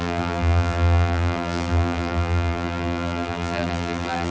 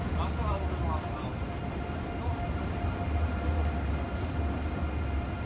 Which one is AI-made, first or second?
first